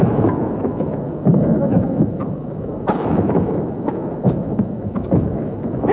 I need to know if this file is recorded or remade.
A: remade